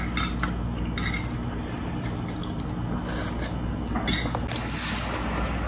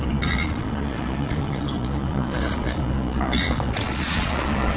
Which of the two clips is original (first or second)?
first